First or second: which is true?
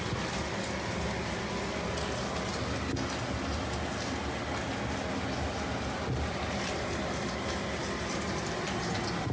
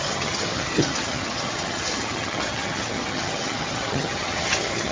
first